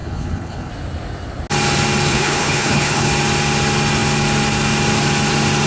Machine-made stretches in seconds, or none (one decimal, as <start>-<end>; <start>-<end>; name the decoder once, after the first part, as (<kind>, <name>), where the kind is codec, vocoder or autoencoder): 0.0-0.7 (codec, HILCodec); 2.1-3.1